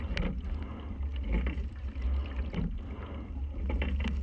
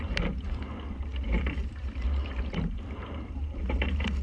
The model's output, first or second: second